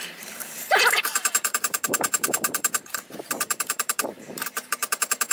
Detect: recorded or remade remade